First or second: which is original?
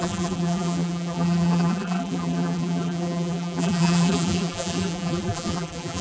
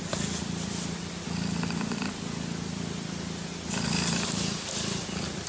second